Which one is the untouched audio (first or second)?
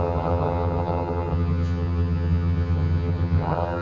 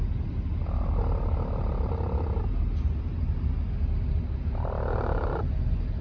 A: second